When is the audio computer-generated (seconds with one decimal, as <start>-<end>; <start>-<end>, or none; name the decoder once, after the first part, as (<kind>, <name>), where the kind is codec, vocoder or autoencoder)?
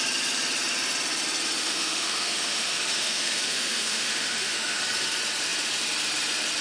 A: 1.6-4.8 (autoencoder, DAC-VAE)